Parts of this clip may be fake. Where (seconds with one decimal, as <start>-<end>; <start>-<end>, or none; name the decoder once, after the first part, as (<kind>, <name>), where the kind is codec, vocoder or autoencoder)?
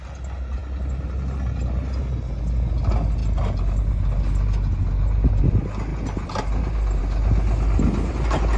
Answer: none